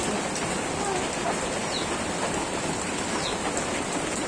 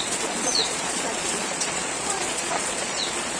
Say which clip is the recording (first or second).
first